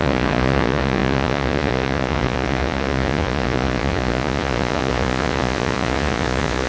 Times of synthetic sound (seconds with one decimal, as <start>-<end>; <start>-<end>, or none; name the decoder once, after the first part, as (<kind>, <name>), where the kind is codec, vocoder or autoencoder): 0.0-6.7 (vocoder, Vocos)